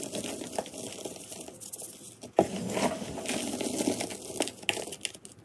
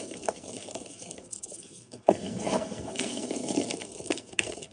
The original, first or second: first